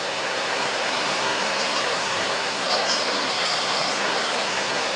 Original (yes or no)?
no